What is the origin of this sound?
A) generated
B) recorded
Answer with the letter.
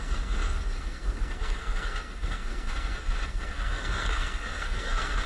A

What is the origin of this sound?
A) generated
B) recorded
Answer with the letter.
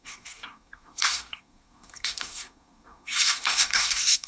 A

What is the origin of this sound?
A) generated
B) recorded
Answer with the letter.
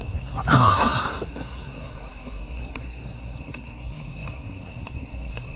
A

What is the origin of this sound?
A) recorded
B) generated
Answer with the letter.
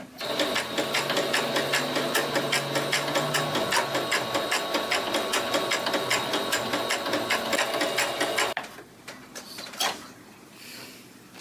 A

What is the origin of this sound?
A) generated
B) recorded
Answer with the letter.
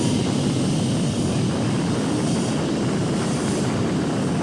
B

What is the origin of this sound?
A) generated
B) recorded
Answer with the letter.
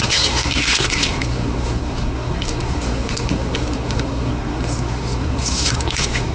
A